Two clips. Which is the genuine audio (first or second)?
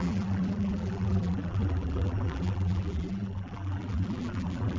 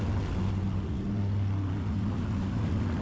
second